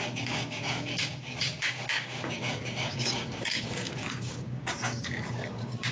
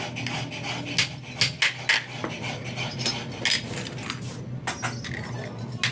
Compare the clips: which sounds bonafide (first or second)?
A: second